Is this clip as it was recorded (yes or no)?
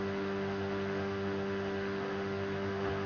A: no